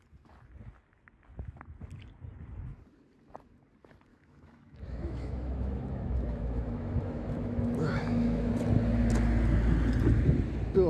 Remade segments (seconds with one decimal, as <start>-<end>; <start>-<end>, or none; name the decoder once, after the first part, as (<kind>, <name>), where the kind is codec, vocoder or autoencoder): 4.1-8.5 (autoencoder, DAC-VAE)